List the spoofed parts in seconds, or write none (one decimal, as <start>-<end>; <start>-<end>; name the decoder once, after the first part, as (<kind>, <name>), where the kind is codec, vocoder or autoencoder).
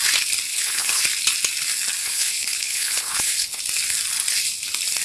0.5-1.0 (codec, HILCodec); 2.0-3.6